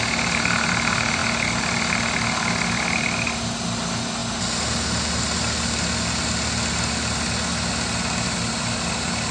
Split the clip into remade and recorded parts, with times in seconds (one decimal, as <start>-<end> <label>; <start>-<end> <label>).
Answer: 0.0-9.3 recorded